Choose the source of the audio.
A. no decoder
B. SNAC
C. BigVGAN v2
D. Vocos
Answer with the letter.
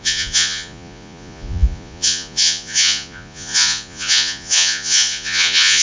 D